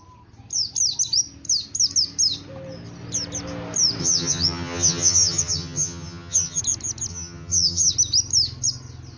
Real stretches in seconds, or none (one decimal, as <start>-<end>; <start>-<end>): 0.0-4.0; 6.6-7.1; 7.9-9.2